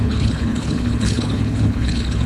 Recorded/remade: remade